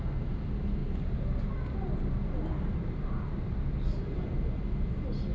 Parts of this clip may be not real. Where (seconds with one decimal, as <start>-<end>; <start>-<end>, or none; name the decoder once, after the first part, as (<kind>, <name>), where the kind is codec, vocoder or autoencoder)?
none